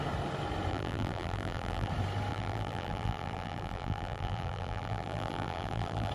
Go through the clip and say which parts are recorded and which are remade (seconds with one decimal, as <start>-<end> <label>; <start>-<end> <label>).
0.0-0.7 recorded; 0.7-1.9 remade; 1.9-2.3 recorded; 2.3-6.1 remade